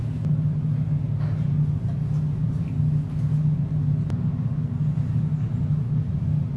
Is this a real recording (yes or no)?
yes